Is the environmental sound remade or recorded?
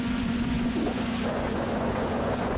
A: remade